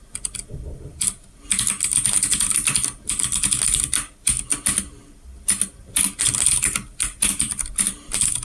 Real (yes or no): yes